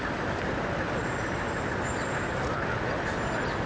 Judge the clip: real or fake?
real